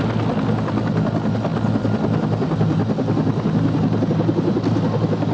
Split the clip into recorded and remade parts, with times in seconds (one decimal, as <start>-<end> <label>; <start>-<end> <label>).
0.0-5.3 recorded